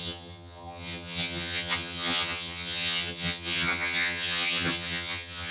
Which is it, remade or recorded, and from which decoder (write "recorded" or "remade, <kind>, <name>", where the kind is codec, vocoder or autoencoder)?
remade, vocoder, HiFi-GAN